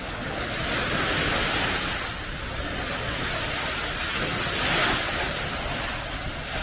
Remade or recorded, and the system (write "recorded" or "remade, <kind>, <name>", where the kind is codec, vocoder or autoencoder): recorded